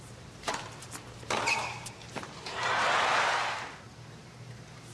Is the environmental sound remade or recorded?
remade